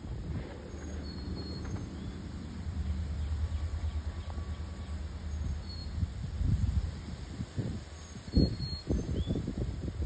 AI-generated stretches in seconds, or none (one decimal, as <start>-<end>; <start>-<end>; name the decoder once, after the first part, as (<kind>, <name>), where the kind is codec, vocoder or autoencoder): 6.0-10.1 (vocoder, BigVGAN v2)